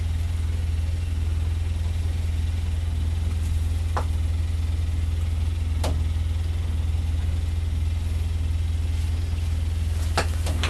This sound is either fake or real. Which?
real